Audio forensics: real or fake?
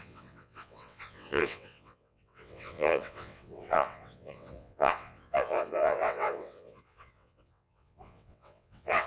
fake